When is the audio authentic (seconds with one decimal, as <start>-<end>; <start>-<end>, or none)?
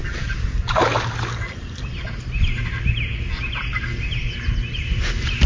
0.0-5.5